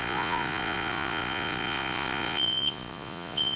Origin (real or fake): fake